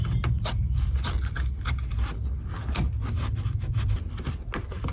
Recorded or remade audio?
recorded